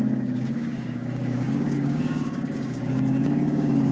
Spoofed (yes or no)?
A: yes